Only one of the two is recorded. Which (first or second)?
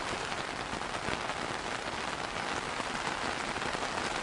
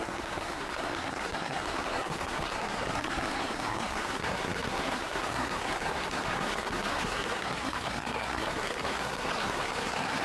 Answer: first